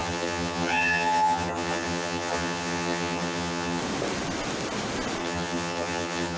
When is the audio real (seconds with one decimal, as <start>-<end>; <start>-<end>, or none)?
3.8-5.2

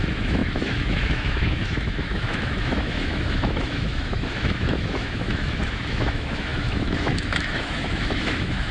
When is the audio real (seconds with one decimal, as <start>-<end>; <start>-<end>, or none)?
none

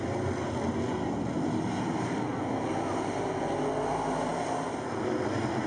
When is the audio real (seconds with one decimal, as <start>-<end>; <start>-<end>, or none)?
0.9-4.3

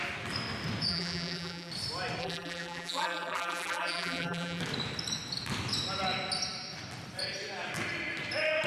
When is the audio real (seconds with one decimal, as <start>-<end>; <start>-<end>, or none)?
0.0-0.9; 1.7-2.2; 4.6-8.7

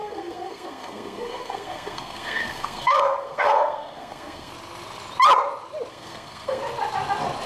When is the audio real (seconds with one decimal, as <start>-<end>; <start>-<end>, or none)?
4.5-5.9; 6.6-7.5

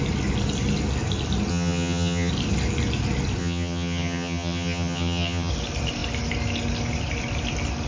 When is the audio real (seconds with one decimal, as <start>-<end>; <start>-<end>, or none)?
0.0-1.5; 2.3-3.4; 5.5-7.9